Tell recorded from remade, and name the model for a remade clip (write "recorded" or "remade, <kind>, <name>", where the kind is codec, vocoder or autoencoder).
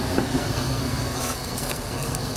remade, codec, SNAC